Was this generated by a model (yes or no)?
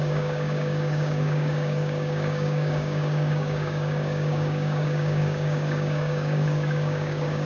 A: yes